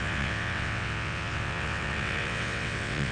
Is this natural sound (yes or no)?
no